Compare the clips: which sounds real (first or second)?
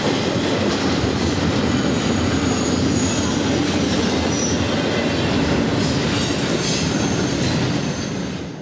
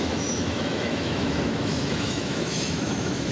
first